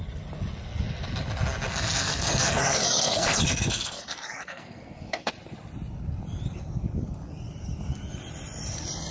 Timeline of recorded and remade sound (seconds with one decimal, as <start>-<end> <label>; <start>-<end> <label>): 0.0-1.7 recorded; 1.7-5.3 remade; 5.3-9.1 recorded